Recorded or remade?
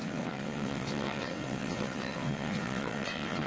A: remade